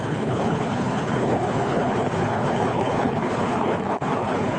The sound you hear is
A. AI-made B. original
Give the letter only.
A